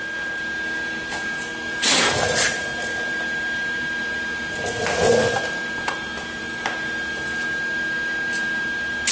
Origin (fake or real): real